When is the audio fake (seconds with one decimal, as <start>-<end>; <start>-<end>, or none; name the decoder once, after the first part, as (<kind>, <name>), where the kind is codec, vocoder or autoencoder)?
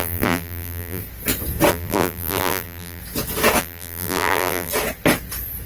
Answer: 0.0-1.0 (vocoder, BigVGAN v2); 1.7-3.0; 3.6-4.7